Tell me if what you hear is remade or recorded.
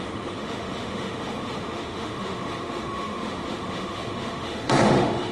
remade